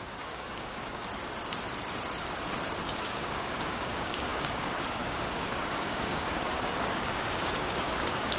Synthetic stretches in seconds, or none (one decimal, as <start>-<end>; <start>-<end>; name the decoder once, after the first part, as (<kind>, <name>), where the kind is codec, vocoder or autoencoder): 0.0-1.1 (codec, DAC); 2.9-8.4